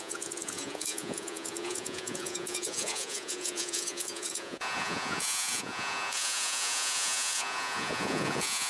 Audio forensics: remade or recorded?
remade